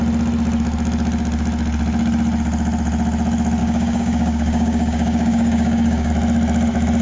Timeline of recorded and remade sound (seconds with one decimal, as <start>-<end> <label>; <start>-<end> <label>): 0.0-3.6 recorded; 3.6-6.1 remade; 6.1-7.0 recorded